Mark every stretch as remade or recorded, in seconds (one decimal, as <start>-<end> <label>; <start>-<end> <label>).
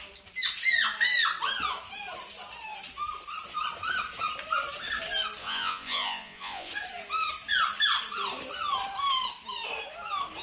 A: 0.0-5.4 recorded; 5.4-6.7 remade; 6.7-10.4 recorded